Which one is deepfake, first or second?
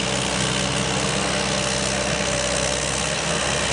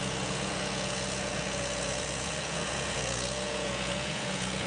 second